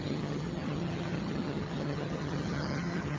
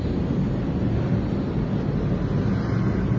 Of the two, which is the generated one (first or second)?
first